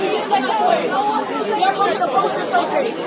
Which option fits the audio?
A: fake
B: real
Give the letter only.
B